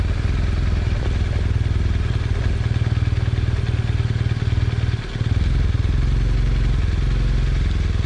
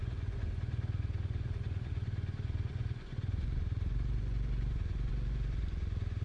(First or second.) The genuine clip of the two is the first